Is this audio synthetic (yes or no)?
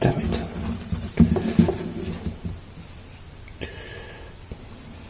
no